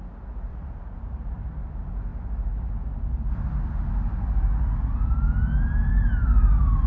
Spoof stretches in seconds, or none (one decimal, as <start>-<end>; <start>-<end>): 0.5-1.6